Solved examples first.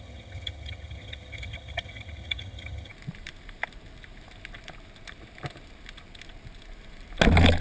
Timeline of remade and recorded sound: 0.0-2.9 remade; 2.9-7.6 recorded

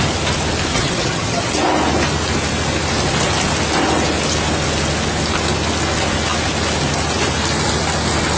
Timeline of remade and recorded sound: 0.0-0.7 recorded; 0.7-1.5 remade; 1.5-8.4 recorded

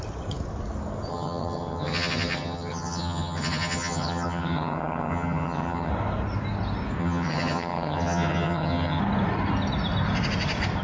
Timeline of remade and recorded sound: 0.0-1.1 recorded; 1.1-5.9 remade; 5.9-7.0 recorded; 7.0-9.0 remade; 9.0-10.8 recorded

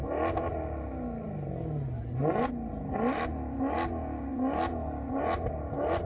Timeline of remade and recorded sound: 0.0-6.1 recorded

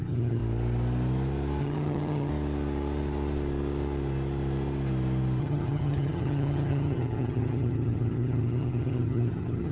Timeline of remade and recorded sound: 0.0-0.4 remade; 0.4-1.6 recorded; 1.6-2.3 remade; 2.3-5.4 recorded; 5.4-9.7 remade

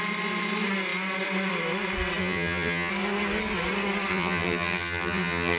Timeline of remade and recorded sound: 0.0-2.2 recorded; 2.2-2.9 remade; 2.9-4.1 recorded; 4.1-5.6 remade